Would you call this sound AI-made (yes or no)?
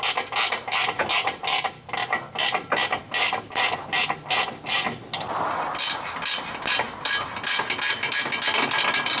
no